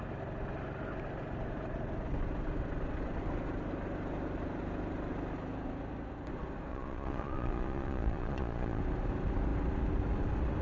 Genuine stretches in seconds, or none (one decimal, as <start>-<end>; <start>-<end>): 0.0-6.7; 8.8-10.6